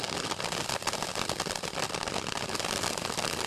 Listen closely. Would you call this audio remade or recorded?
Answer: recorded